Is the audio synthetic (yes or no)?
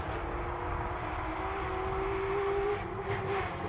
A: no